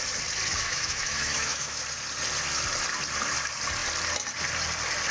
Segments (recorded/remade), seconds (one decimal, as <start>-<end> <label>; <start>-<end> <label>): 0.0-0.5 recorded; 0.5-1.8 remade; 1.8-5.1 recorded